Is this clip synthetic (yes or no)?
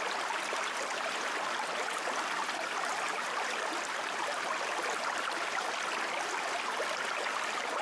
no